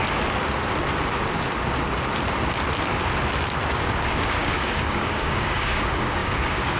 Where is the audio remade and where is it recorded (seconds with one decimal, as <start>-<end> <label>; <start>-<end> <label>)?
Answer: 0.0-3.7 recorded; 3.7-6.8 remade